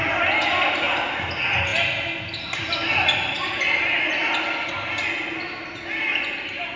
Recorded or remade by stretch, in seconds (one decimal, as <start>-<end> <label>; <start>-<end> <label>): 0.0-6.8 recorded